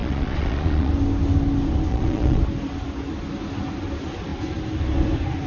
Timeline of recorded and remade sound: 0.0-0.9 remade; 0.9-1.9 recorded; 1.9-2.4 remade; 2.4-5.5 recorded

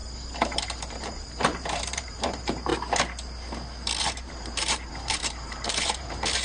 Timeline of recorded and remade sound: 0.0-0.6 recorded; 0.6-2.7 remade; 2.7-4.0 recorded; 4.0-6.4 remade

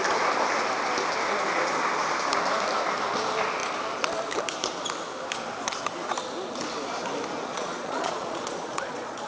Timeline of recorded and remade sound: 0.0-7.5 recorded; 7.5-9.3 remade

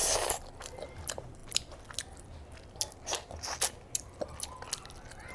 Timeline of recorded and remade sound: 0.0-5.3 recorded